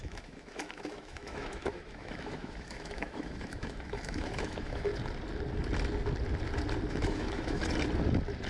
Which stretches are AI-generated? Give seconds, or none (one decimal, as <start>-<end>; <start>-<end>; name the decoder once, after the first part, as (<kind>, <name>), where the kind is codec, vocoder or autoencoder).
0.0-4.9 (autoencoder, DAC-VAE); 6.9-7.6